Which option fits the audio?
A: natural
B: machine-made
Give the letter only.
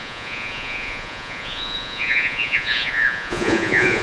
B